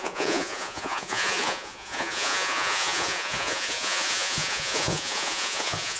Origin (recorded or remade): remade